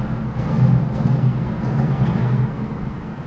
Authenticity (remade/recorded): remade